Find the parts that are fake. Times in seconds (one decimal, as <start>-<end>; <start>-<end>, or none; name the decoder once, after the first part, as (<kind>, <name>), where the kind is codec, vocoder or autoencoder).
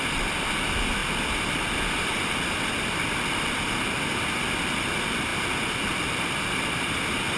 none